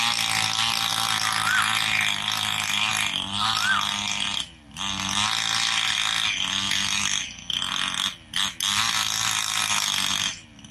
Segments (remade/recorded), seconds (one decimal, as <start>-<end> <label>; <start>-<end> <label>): 0.0-10.7 recorded